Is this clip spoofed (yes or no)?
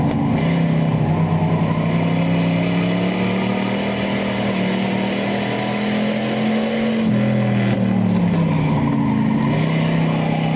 no